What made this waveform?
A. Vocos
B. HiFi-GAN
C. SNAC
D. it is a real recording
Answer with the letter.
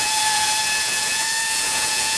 A